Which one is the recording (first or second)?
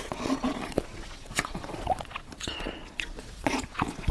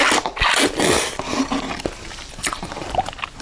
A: second